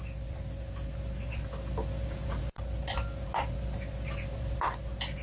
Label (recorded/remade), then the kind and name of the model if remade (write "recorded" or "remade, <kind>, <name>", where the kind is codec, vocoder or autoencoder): recorded